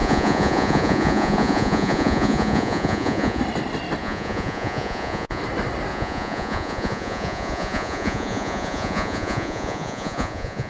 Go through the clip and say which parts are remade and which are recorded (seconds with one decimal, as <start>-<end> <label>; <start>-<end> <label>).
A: 0.0-3.4 remade; 3.4-4.0 recorded; 4.0-5.4 remade; 5.4-5.9 recorded; 5.9-10.7 remade